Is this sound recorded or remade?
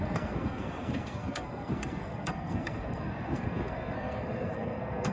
remade